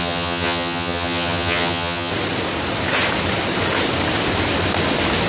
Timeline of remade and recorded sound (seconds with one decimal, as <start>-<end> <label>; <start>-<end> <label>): 0.0-2.1 remade; 2.1-5.3 recorded